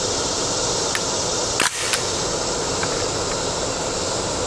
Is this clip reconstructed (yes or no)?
no